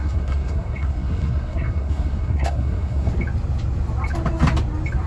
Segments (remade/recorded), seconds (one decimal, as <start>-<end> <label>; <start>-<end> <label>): 0.0-3.1 remade; 3.1-5.1 recorded